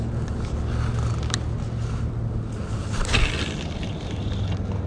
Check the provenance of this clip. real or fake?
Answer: real